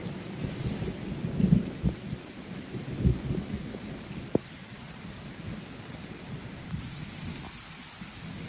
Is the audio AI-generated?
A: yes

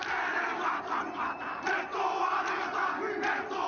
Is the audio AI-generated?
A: no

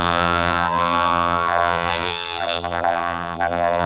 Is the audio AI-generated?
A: yes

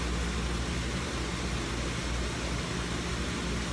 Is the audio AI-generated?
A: no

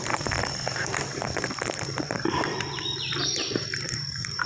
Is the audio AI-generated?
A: yes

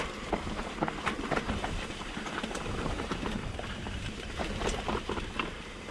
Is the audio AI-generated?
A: yes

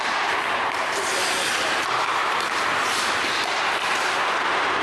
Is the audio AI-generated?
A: yes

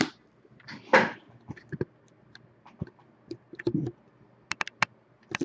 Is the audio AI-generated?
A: no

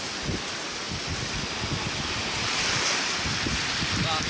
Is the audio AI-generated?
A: no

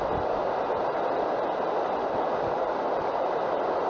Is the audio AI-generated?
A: no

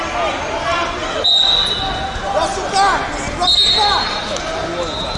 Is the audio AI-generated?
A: no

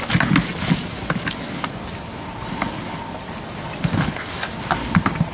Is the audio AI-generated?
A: no